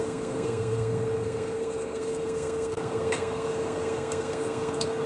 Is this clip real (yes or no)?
no